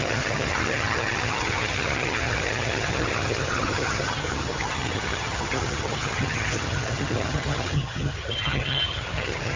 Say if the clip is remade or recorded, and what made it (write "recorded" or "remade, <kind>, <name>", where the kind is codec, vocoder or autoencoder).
remade, vocoder, HiFi-GAN